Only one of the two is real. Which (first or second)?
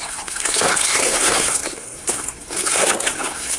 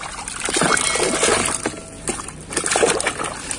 second